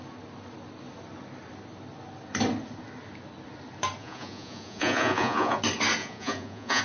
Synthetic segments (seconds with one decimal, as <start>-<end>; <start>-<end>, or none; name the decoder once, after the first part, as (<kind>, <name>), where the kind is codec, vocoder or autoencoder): 4.0-5.6 (vocoder, Vocos); 6.0-6.8